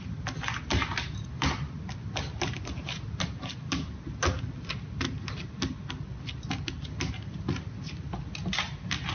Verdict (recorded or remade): recorded